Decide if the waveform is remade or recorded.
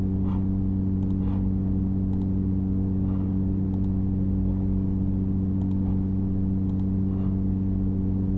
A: recorded